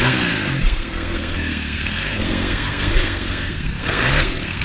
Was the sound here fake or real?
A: fake